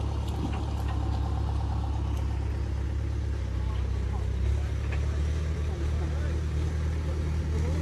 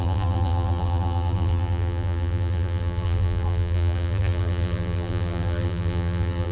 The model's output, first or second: second